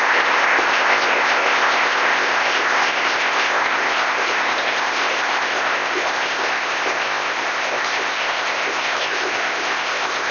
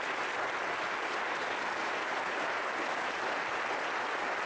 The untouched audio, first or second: second